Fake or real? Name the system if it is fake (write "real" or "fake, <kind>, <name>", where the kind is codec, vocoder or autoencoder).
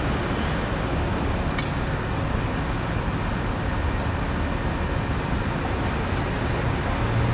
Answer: real